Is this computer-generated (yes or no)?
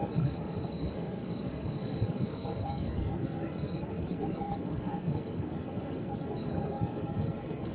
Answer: yes